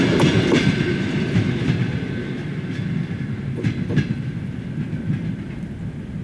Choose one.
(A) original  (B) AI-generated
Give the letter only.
A